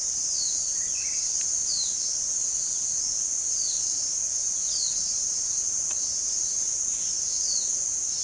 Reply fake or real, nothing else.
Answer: real